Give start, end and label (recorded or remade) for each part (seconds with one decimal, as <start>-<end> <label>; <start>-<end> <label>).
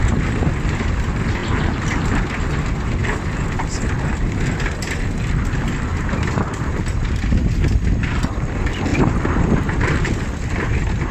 0.0-1.4 recorded; 1.4-2.4 remade; 2.4-5.9 recorded; 5.9-7.3 remade; 7.3-8.9 recorded; 8.9-10.0 remade; 10.0-11.1 recorded